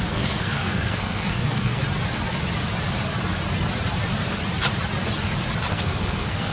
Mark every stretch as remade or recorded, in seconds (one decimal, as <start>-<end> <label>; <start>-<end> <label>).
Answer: 0.0-1.8 remade; 1.8-5.7 recorded; 5.7-6.5 remade